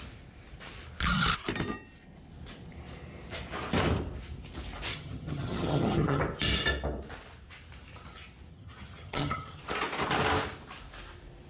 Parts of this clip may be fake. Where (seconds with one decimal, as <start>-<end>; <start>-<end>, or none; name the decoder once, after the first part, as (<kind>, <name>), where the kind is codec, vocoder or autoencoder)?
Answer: 4.9-6.2 (vocoder, HiFi-GAN); 8.5-9.6